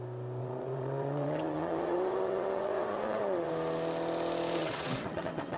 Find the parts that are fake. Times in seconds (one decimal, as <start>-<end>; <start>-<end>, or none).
0.4-3.5; 4.6-5.6

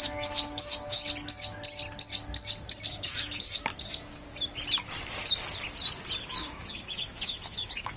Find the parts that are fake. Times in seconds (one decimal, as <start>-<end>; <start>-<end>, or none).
0.0-1.0; 2.9-3.7; 6.2-8.0

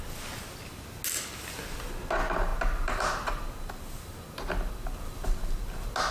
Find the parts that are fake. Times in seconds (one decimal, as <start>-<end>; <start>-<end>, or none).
none

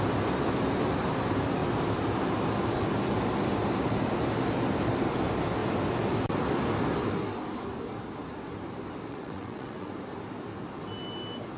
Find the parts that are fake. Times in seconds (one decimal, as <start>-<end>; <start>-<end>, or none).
9.1-9.9

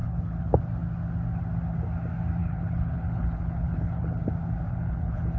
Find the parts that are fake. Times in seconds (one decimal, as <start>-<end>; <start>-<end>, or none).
0.0-0.6; 2.4-4.3; 4.7-5.4

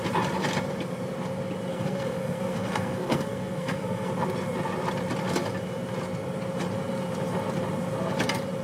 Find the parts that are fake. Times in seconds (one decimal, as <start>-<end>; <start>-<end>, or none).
1.7-4.1

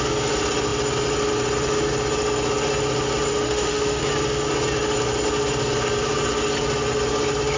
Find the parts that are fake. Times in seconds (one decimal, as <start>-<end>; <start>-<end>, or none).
3.3-4.0

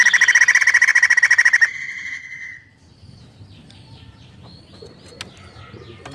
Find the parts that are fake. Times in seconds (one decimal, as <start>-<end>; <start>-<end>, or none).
none